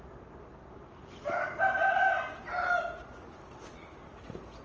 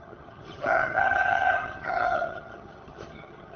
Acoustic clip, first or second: first